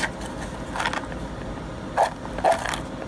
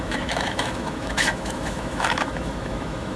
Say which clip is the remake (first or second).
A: second